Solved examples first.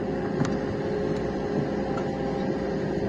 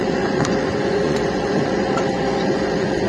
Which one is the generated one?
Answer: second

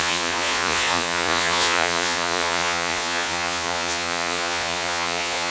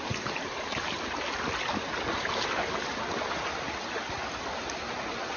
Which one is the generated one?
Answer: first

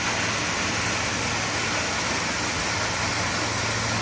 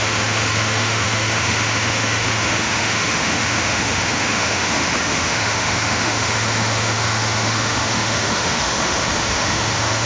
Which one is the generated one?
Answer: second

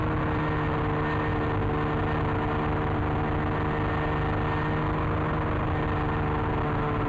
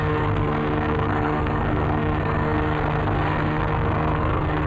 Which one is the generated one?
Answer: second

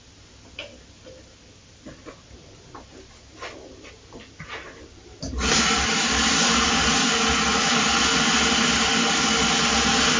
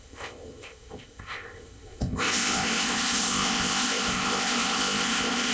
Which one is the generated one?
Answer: second